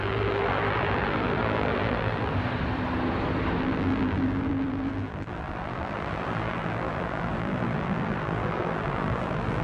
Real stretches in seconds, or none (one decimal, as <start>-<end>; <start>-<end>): 2.3-3.6